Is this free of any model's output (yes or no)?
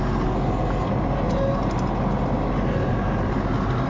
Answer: yes